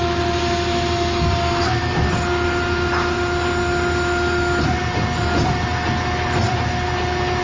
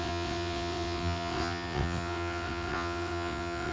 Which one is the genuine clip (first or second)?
first